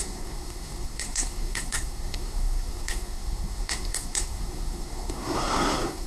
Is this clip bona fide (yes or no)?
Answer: no